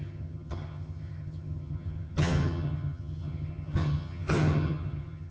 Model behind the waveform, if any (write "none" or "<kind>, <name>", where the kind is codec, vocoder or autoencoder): vocoder, HiFi-GAN